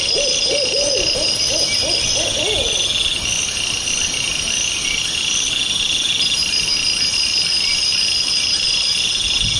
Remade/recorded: recorded